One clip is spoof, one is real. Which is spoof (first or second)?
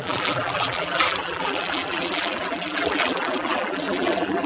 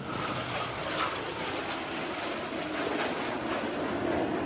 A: first